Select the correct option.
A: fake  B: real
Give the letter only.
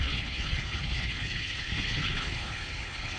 A